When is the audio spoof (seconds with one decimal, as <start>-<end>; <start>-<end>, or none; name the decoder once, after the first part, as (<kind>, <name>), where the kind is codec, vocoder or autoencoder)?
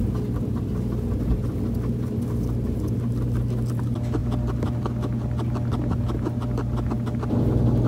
none